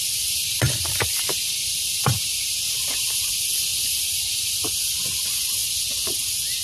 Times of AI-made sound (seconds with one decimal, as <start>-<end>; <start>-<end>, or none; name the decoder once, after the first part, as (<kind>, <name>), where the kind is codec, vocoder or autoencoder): 0.4-3.3 (vocoder, BigVGAN v2); 3.7-4.6